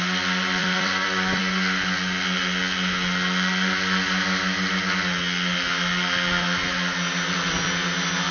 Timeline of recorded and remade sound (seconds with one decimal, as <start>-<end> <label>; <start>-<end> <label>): 0.0-0.6 recorded; 0.6-1.4 remade; 1.4-8.3 recorded